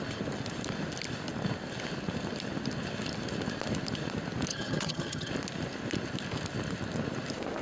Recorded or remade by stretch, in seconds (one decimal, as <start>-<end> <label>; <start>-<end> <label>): 0.0-4.5 recorded; 4.5-5.3 remade; 5.3-7.6 recorded